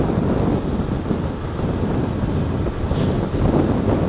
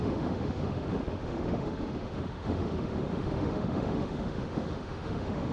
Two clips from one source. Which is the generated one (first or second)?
second